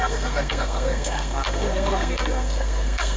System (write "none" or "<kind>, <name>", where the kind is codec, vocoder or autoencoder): codec, SNAC